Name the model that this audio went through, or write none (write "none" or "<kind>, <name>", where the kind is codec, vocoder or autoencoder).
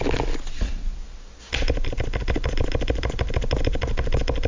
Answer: none